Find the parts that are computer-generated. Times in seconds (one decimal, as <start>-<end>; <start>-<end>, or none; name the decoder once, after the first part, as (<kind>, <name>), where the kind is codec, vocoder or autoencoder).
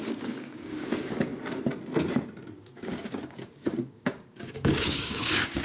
0.0-1.3 (codec, DAC); 2.6-5.6